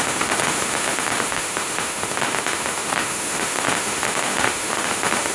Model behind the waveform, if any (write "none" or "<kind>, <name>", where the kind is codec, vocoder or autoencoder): autoencoder, DAC-VAE